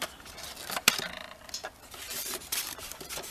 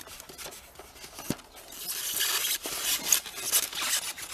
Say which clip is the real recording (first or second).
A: second